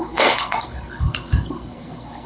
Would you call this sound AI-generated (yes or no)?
yes